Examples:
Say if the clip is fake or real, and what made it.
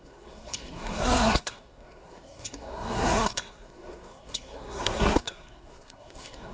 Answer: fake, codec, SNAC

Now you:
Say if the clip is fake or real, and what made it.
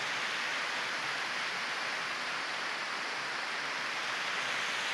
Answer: real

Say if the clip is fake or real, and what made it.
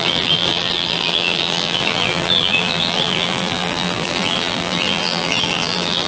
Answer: fake, vocoder, BigVGAN v2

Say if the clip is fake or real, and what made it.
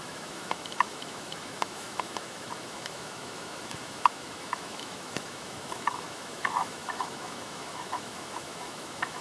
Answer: fake, autoencoder, DAC-VAE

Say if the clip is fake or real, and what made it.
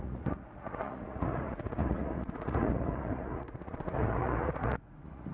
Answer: fake, vocoder, Vocos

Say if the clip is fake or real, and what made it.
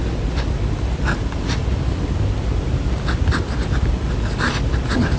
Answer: real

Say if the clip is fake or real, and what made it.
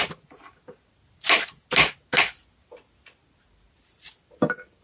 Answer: real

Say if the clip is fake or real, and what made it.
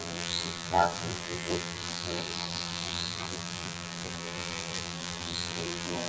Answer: fake, vocoder, BigVGAN v2